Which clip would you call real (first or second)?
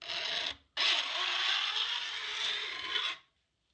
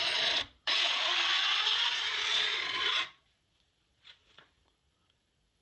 first